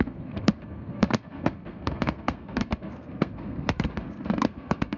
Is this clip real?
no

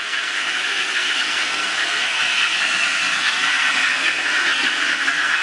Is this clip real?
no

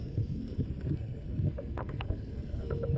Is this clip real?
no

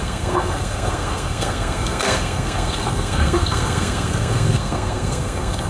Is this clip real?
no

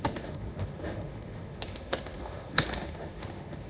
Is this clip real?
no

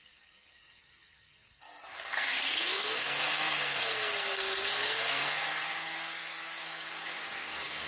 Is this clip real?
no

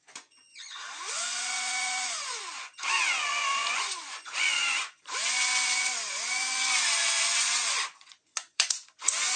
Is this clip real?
no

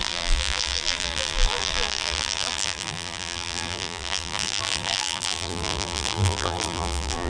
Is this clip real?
no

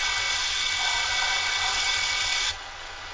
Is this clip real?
no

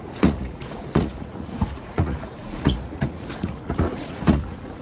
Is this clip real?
no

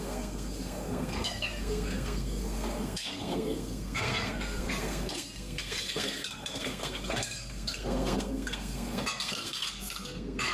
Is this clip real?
no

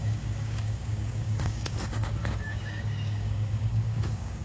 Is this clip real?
no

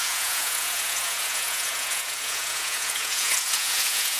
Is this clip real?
no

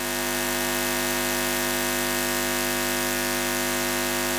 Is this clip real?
yes